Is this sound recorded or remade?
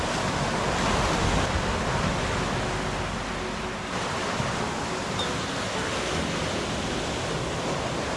recorded